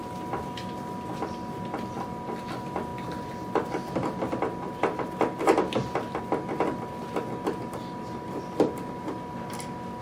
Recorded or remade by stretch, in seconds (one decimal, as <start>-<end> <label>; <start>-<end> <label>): 0.0-10.0 recorded